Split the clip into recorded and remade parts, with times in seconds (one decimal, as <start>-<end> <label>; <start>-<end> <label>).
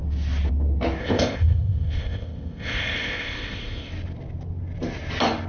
0.0-1.0 recorded; 1.0-3.9 remade; 3.9-5.5 recorded